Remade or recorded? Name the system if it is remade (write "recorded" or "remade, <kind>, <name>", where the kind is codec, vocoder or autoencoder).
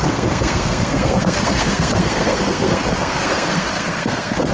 remade, codec, SNAC